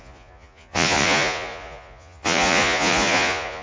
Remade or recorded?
remade